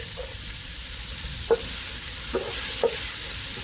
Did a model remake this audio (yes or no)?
no